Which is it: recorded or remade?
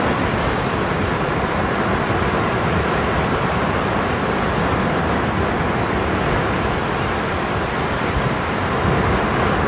recorded